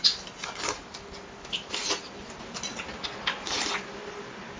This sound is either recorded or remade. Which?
recorded